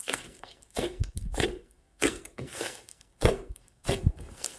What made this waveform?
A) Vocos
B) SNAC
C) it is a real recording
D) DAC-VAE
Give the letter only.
B